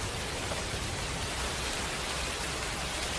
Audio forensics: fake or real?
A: real